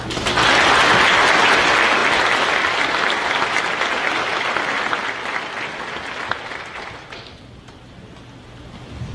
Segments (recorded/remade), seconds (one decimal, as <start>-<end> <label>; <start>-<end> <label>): 0.0-9.1 recorded